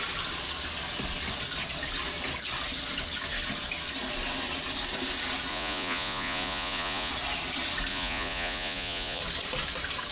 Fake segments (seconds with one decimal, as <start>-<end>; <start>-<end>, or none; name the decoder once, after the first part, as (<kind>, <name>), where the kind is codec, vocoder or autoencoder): 5.5-7.1 (vocoder, Vocos); 7.9-9.2